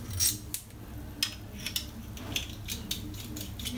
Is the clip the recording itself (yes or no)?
yes